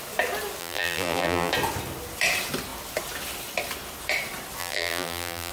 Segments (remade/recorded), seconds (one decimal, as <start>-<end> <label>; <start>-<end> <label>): 0.0-0.6 recorded; 0.6-1.5 remade; 1.5-4.6 recorded; 4.6-5.5 remade